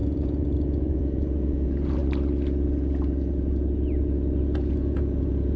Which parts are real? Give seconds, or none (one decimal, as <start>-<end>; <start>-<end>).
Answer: 2.0-4.4